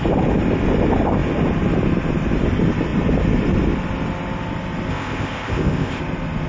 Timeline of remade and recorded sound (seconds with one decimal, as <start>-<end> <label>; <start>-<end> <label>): 0.0-4.9 recorded; 4.9-6.0 remade; 6.0-6.5 recorded